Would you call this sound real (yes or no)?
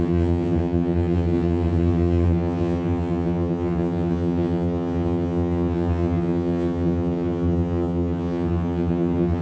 no